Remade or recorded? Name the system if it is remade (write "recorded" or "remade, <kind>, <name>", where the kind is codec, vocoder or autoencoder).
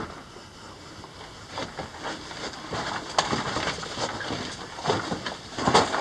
recorded